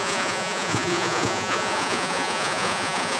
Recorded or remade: remade